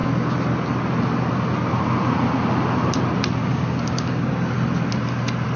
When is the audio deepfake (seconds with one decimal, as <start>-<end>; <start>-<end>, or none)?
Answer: 3.4-4.3